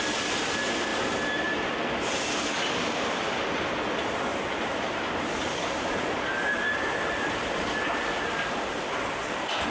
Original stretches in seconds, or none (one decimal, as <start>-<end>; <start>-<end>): 0.0-4.3; 5.1-9.7